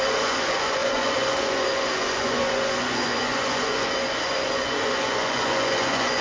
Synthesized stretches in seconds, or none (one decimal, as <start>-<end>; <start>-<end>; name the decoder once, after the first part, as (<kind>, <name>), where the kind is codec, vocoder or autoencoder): 0.0-6.2 (vocoder, Vocos)